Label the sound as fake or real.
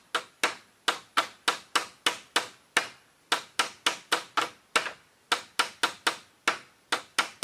real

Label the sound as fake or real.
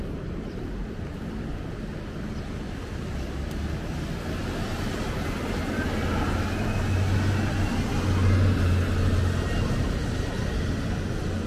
real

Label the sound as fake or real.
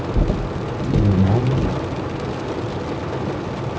real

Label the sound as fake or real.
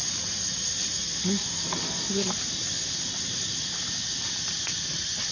real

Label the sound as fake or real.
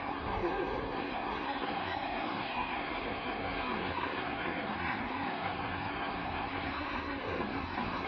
fake